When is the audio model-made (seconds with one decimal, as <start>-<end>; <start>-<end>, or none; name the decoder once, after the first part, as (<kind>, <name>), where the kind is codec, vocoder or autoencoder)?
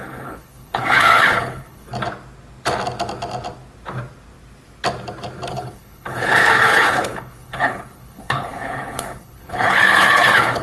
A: 0.0-1.9 (codec, HILCodec); 5.5-10.6